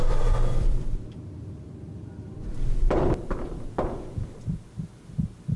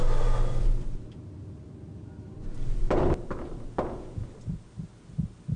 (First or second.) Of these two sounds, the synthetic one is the first